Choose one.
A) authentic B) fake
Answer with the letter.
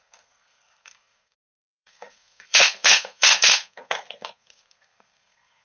B